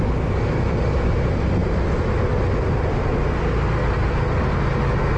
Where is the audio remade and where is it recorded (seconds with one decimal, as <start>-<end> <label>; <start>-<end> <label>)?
0.0-5.2 recorded